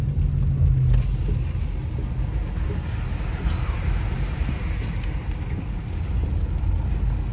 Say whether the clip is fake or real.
real